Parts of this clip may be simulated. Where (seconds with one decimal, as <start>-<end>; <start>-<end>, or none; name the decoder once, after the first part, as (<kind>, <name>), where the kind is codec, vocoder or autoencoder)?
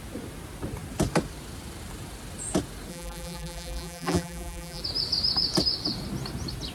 2.9-4.8 (vocoder, BigVGAN v2)